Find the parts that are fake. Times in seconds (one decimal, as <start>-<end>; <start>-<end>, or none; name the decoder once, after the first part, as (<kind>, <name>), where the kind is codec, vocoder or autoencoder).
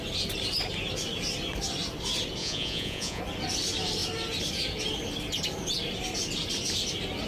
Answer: 2.4-3.2 (vocoder, Vocos)